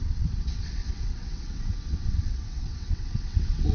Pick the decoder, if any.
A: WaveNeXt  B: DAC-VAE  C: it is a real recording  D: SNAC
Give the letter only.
A